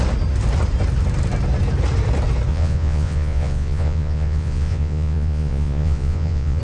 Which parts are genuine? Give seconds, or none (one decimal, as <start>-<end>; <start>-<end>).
0.0-2.5

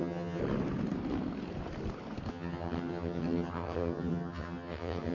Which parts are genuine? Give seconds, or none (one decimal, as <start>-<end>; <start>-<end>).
0.4-2.3

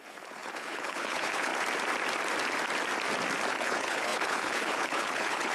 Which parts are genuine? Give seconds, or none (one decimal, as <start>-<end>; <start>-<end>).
1.5-3.5